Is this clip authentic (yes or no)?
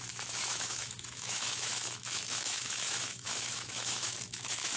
no